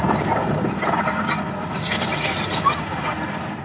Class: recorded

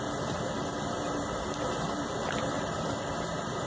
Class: remade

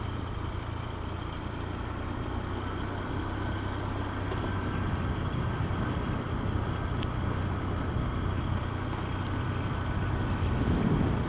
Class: recorded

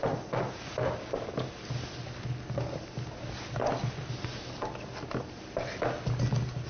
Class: recorded